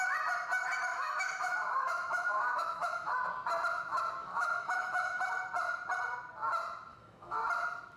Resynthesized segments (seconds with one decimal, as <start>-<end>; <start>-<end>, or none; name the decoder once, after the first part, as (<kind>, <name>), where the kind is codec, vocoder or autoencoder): 0.9-3.1 (autoencoder, DAC-VAE); 4.2-5.2; 6.9-7.4